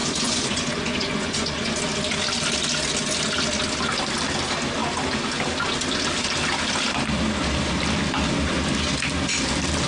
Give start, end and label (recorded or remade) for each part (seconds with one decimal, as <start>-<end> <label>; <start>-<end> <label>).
0.0-1.7 remade; 1.7-9.9 recorded